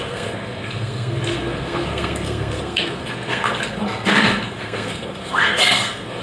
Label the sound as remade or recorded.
remade